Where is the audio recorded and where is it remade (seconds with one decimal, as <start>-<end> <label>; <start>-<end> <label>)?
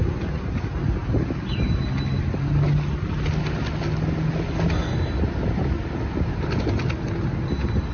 0.0-7.9 recorded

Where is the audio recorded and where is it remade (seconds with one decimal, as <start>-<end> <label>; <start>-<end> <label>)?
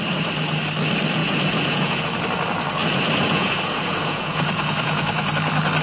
0.0-1.2 recorded; 1.2-2.0 remade; 2.0-2.8 recorded; 2.8-5.3 remade; 5.3-5.8 recorded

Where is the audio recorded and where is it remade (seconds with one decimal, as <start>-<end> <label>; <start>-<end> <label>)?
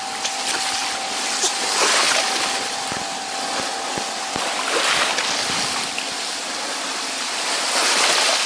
0.0-8.5 recorded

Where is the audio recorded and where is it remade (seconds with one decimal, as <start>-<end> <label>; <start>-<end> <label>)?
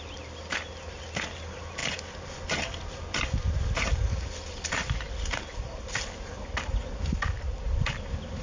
0.0-8.4 recorded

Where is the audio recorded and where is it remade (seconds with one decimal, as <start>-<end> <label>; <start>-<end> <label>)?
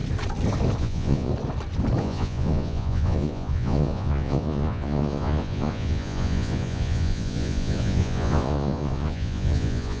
0.0-0.8 recorded; 0.8-1.3 remade; 1.3-2.0 recorded; 2.0-10.0 remade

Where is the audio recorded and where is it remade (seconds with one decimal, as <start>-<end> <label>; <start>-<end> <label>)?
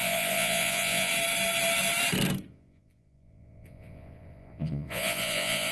0.0-1.1 remade; 1.1-2.5 recorded; 2.5-5.7 remade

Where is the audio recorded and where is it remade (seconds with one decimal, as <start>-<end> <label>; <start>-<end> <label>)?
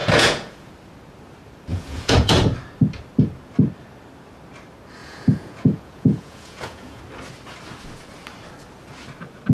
0.0-0.7 remade; 0.7-1.7 recorded; 1.7-2.3 remade; 2.3-5.0 recorded; 5.0-7.0 remade; 7.0-9.5 recorded